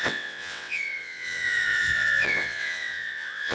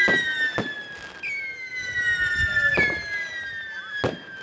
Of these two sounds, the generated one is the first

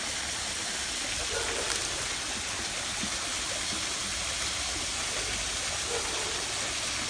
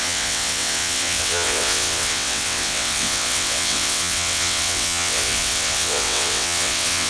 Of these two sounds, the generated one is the second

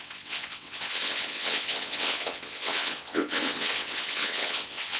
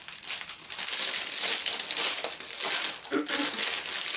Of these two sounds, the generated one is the first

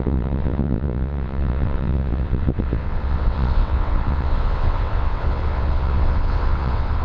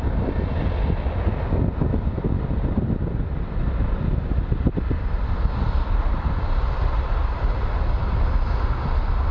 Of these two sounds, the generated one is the first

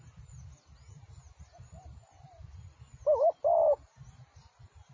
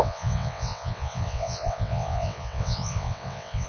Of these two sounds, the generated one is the second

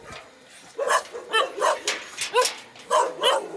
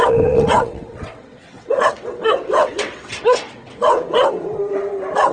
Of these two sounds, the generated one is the second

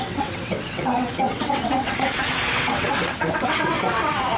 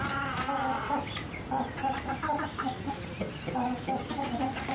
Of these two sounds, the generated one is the first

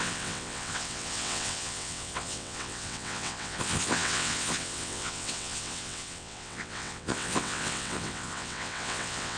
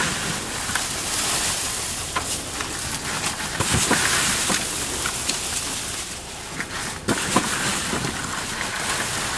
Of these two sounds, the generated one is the first